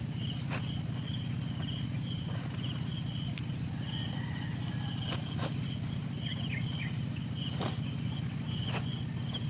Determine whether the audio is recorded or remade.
recorded